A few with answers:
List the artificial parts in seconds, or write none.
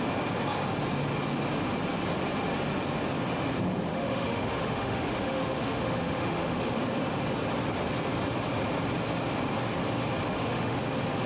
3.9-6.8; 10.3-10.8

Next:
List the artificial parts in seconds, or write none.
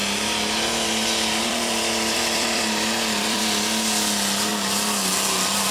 0.0-3.4; 4.5-5.1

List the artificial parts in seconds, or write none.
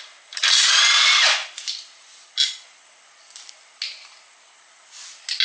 none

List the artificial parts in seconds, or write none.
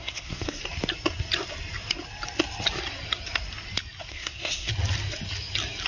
0.0-0.6; 4.1-4.7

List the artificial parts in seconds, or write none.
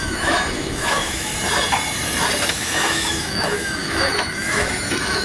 0.0-1.3; 2.5-5.2